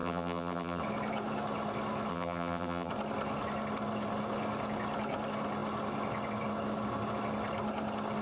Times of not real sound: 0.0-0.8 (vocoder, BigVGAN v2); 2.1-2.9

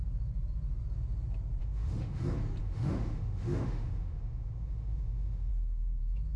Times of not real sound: 1.6-2.2 (autoencoder, DAC-VAE); 2.6-5.5